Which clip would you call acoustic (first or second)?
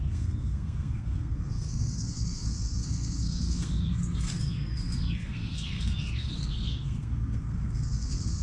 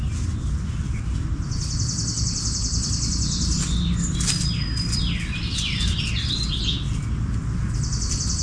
second